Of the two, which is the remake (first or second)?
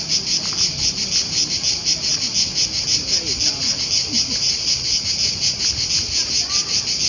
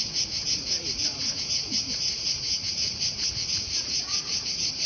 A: second